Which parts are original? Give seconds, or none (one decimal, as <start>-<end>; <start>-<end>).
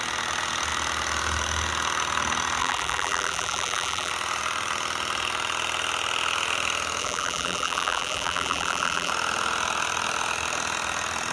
0.0-2.6; 4.1-7.0; 9.1-11.3